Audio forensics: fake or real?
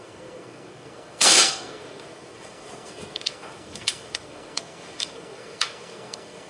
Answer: fake